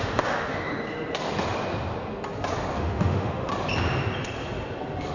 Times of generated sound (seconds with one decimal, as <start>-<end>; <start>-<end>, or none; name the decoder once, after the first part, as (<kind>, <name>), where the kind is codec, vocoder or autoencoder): 0.0-0.7 (autoencoder, DAC-VAE); 2.8-3.5